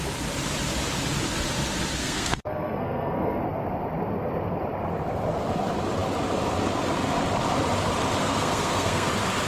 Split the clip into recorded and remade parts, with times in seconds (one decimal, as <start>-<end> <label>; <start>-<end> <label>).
0.0-2.0 recorded; 2.0-3.4 remade; 3.4-8.2 recorded; 8.2-9.1 remade; 9.1-9.5 recorded